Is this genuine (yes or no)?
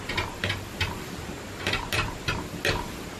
yes